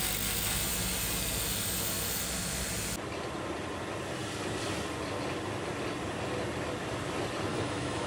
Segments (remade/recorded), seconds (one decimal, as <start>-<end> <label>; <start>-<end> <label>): 0.0-7.5 recorded; 7.5-8.1 remade